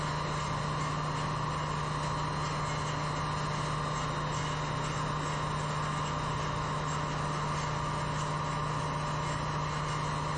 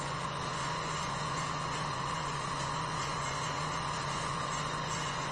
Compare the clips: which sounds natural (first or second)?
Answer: first